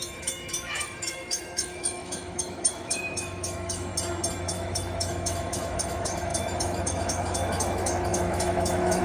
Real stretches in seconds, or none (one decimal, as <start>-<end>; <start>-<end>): 3.9-4.4